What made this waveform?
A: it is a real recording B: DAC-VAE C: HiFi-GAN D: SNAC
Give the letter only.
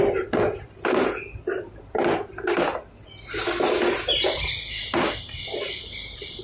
A